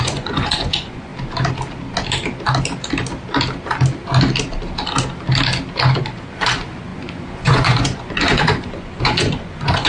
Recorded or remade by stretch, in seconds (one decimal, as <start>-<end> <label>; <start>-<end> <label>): 0.0-1.1 remade; 1.1-6.0 recorded; 6.0-9.9 remade

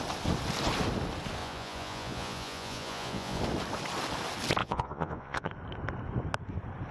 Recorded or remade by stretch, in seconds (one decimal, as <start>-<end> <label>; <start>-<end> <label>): 0.0-1.4 recorded; 1.4-3.4 remade; 3.4-4.6 recorded; 4.6-5.5 remade; 5.5-6.9 recorded